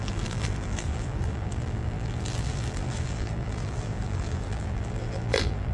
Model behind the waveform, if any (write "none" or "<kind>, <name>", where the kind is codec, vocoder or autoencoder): vocoder, BigVGAN v2